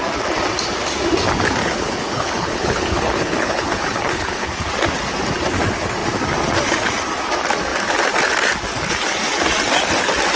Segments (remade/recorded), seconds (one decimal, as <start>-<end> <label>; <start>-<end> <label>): 0.0-1.6 recorded; 1.6-4.7 remade; 4.7-10.4 recorded